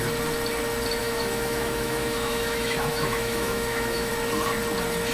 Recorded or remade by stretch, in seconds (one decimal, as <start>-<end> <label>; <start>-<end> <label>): 0.0-1.0 recorded; 1.0-4.1 remade; 4.1-5.1 recorded